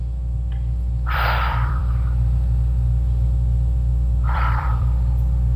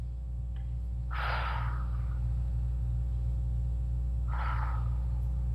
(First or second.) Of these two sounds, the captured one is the second